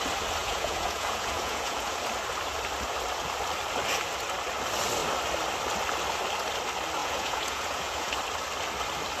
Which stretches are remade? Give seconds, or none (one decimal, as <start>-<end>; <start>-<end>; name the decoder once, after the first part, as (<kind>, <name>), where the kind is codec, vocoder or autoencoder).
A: 0.4-2.0 (vocoder, Vocos); 7.0-8.1